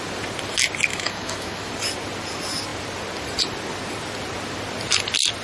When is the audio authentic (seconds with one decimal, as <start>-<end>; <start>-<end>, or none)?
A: 0.0-0.9; 1.7-5.4